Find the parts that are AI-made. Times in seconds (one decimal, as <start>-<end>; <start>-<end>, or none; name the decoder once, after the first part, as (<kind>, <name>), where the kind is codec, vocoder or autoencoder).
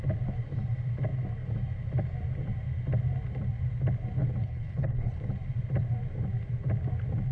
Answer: 4.4-5.2 (codec, HILCodec)